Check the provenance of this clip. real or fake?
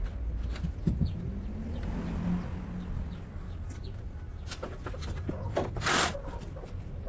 real